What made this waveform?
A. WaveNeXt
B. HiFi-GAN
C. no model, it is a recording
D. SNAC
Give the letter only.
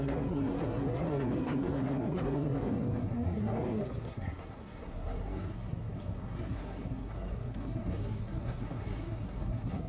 D